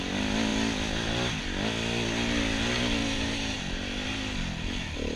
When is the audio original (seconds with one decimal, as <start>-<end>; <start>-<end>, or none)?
0.0-3.0; 3.6-5.2